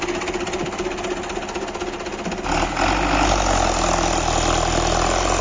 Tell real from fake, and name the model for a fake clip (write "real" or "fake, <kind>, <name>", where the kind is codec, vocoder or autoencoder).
real